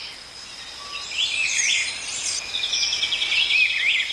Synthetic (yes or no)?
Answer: no